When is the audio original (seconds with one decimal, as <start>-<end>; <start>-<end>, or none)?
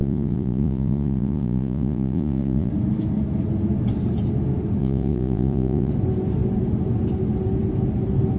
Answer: 2.7-4.8; 5.9-8.4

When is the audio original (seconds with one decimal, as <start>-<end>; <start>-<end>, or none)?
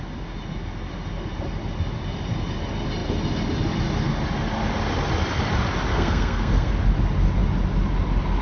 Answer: 0.0-5.9; 6.7-8.4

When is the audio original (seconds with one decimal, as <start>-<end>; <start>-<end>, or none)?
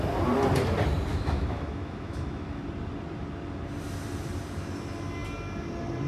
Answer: 0.0-1.1; 2.6-6.1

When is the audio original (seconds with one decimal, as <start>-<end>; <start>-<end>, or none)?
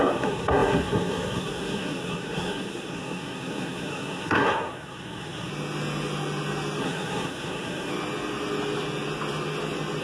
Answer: 5.5-6.8; 7.9-10.0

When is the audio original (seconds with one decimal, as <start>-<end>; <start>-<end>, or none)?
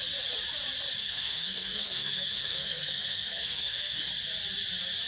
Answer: 0.0-1.0; 4.1-5.1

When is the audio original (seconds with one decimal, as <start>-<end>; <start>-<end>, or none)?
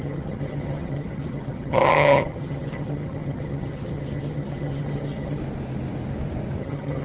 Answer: 5.4-6.6